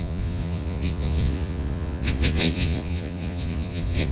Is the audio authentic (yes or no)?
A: no